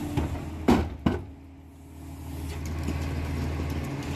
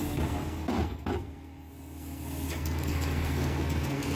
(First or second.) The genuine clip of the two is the first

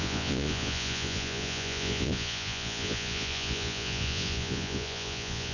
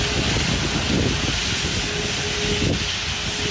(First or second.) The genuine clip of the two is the second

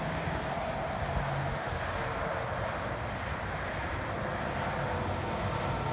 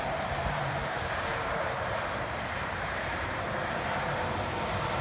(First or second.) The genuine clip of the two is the first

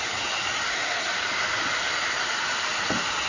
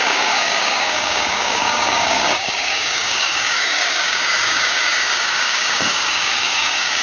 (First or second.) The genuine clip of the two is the first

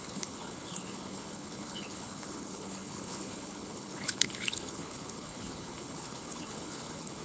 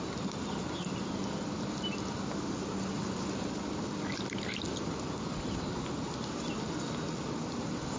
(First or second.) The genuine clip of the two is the second